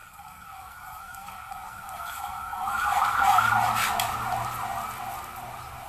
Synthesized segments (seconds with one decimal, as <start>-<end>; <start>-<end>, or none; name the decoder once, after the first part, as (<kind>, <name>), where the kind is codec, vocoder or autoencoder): 0.0-3.5 (codec, SNAC)